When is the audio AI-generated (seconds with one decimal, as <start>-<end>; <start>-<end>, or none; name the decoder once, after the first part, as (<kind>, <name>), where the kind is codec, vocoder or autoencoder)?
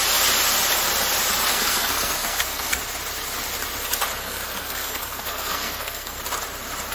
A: 1.5-2.8 (codec, SNAC); 4.2-6.2